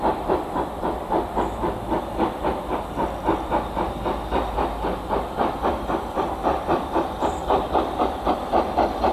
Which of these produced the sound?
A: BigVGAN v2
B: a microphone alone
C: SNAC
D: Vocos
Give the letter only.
B